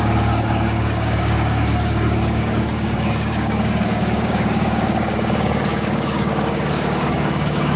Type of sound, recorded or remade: remade